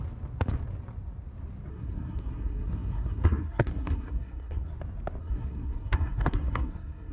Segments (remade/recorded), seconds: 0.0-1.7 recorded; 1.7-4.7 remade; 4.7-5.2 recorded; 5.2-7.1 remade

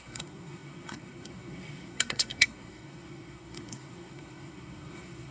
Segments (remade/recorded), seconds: 0.0-5.3 remade

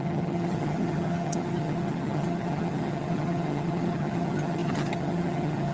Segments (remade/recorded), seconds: 0.0-5.7 remade